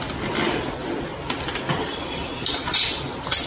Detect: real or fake real